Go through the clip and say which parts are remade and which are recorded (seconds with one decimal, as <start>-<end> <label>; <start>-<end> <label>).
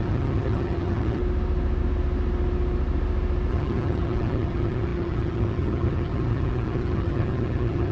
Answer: 0.0-1.2 remade; 1.2-3.5 recorded; 3.5-7.9 remade